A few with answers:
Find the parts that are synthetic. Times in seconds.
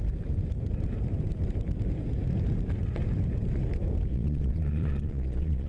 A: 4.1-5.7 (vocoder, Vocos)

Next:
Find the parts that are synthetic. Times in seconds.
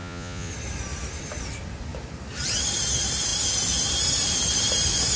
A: 0.0-0.5 (vocoder, Vocos)